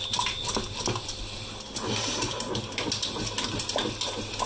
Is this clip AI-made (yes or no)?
no